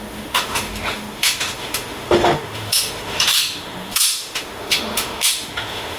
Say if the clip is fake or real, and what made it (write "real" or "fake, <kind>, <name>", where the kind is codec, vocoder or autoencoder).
fake, autoencoder, DAC-VAE